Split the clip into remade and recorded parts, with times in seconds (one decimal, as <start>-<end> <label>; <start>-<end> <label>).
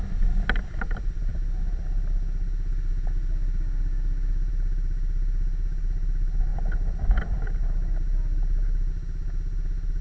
0.0-10.0 recorded